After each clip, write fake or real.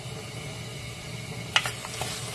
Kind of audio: real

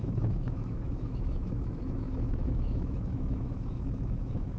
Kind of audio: fake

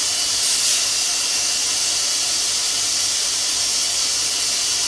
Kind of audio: real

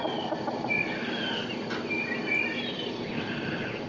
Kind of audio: real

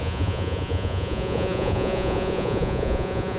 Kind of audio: fake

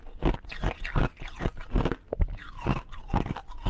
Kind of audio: real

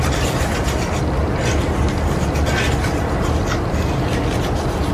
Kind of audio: real